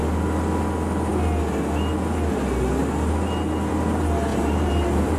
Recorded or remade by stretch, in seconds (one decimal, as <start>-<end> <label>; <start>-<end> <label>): 0.0-4.3 recorded; 4.3-5.2 remade